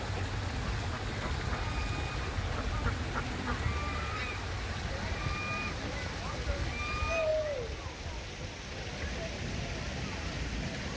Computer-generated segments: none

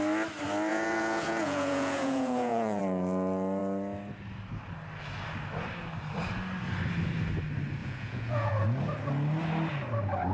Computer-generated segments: 0.7-2.8 (vocoder, Vocos); 7.8-8.5

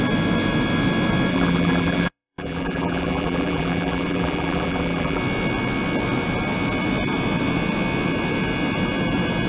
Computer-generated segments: 1.3-5.2 (vocoder, BigVGAN v2)

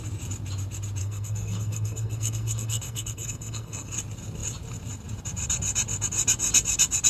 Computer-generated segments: 1.0-3.9 (codec, SNAC)

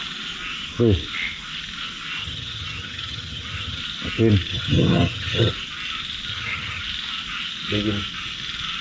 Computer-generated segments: 2.2-3.8 (vocoder, HiFi-GAN); 4.5-5.5; 6.3-6.8

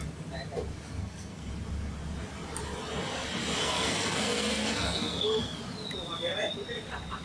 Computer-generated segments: 1.0-1.5 (codec, SNAC); 3.6-5.6